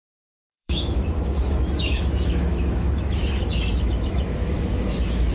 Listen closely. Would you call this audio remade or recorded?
remade